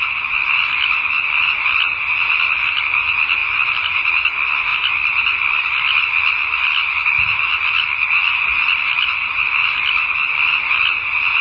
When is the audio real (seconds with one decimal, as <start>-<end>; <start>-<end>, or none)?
0.0-3.4; 4.1-4.7; 5.6-8.2; 9.3-11.4